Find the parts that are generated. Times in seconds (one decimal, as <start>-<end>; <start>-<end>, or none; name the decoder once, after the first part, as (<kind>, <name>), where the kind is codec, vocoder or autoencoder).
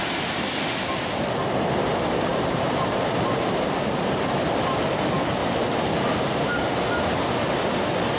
2.3-5.0 (vocoder, BigVGAN v2); 5.4-6.6